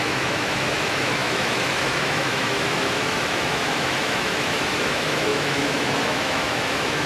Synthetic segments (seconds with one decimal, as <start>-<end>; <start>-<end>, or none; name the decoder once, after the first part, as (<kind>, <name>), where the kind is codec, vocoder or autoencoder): 0.0-7.1 (autoencoder, DAC-VAE)